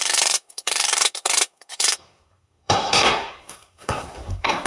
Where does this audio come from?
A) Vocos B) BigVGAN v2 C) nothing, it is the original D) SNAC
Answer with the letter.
D